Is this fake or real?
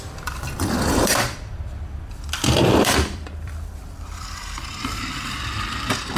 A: fake